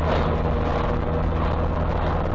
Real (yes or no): yes